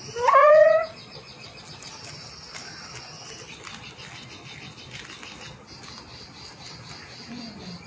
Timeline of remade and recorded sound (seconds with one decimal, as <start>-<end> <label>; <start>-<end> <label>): 0.0-0.4 recorded; 0.4-1.6 remade; 1.6-7.9 recorded